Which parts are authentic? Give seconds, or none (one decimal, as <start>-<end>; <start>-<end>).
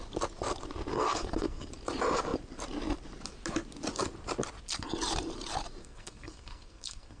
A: 0.0-0.9; 1.7-5.8